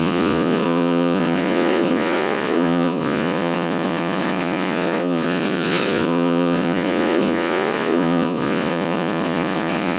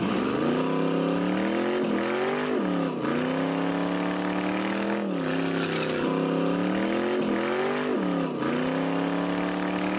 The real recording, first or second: second